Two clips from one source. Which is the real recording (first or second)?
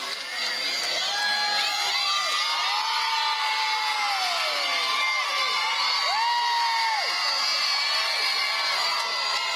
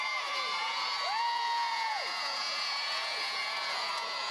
first